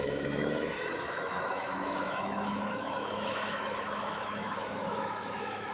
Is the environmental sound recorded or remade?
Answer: remade